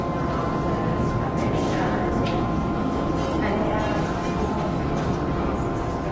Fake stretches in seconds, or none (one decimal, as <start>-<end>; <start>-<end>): 0.9-3.1